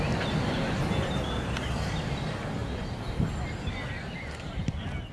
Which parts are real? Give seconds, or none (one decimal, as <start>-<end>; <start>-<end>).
0.0-5.1